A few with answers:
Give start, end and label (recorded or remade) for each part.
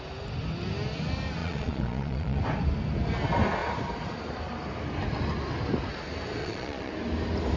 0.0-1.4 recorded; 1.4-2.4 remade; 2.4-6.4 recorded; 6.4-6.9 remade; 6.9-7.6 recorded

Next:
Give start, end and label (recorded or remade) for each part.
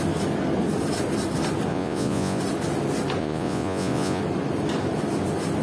0.0-1.7 recorded; 1.7-2.4 remade; 2.4-3.2 recorded; 3.2-4.2 remade; 4.2-5.6 recorded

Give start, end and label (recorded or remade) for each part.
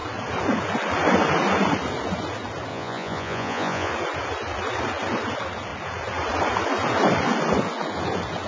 0.0-2.7 recorded; 2.7-3.9 remade; 3.9-8.5 recorded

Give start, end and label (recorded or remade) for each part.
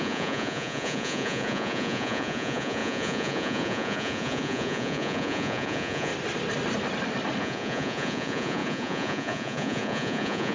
0.0-6.1 remade; 6.1-7.4 recorded; 7.4-10.5 remade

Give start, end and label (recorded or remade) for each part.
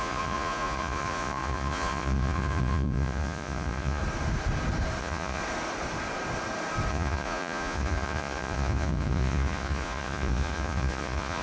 0.0-4.0 remade; 4.0-5.0 recorded; 5.0-5.4 remade; 5.4-6.9 recorded; 6.9-11.4 remade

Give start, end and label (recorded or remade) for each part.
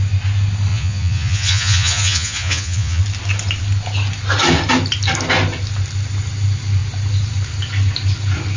0.0-0.7 recorded; 0.7-3.0 remade; 3.0-8.6 recorded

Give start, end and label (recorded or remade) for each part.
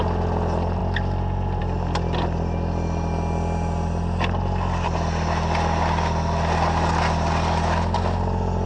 0.0-8.7 recorded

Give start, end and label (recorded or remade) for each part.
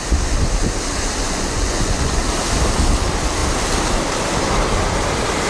0.0-1.2 recorded; 1.2-2.2 remade; 2.2-5.5 recorded